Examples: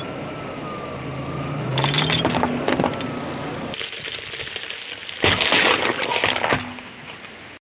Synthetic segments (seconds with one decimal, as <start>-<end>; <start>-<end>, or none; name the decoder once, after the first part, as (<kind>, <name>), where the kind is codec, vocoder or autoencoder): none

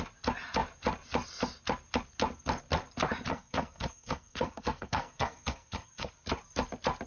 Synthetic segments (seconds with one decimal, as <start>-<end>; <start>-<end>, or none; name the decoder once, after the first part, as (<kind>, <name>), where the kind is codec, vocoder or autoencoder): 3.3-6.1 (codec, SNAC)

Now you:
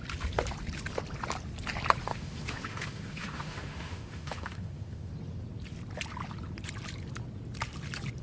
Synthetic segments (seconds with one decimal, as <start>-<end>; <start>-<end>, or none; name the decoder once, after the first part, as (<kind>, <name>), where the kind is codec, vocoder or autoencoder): 2.1-5.1 (autoencoder, DAC-VAE)

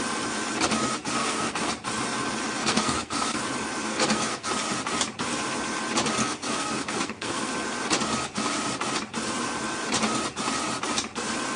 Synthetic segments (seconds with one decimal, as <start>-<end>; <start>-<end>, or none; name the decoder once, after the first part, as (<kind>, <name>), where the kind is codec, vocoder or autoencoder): 1.2-1.7 (codec, SNAC); 2.6-3.4; 3.9-4.5; 6.2-7.5

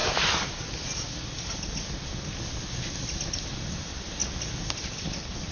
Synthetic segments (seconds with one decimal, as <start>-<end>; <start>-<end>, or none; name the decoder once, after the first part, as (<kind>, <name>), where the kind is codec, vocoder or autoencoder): none

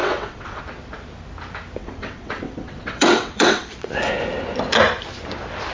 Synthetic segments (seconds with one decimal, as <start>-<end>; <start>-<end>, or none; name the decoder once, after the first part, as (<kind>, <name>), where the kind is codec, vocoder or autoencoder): 0.0-0.6 (vocoder, WaveNeXt); 1.8-3.9